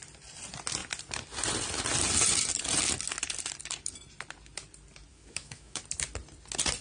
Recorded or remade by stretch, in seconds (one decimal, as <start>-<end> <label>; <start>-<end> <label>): 0.0-5.1 recorded; 5.1-5.8 remade; 5.8-6.8 recorded